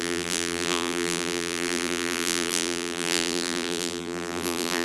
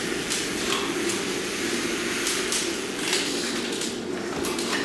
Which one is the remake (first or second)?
first